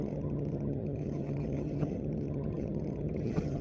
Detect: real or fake fake